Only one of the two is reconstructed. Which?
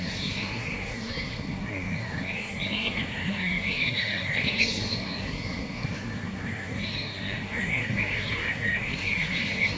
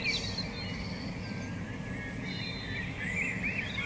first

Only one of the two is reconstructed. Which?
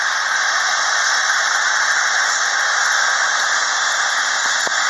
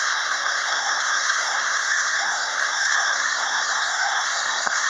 second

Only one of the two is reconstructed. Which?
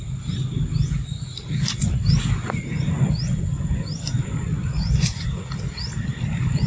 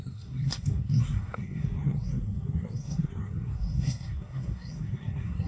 second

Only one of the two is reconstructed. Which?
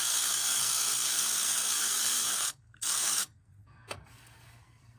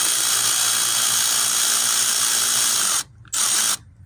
first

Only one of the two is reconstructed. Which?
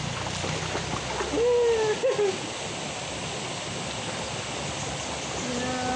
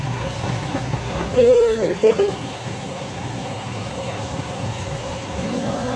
second